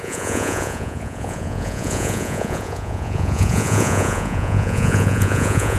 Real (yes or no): no